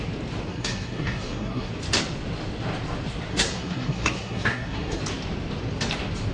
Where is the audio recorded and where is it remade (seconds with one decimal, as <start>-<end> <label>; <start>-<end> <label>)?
0.0-0.5 recorded; 0.5-1.7 remade; 1.7-3.3 recorded; 3.3-5.0 remade; 5.0-6.3 recorded